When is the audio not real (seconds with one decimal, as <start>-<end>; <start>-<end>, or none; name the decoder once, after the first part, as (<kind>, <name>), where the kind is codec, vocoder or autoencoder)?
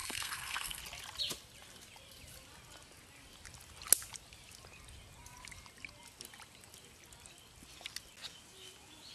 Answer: 0.0-0.8 (codec, SNAC)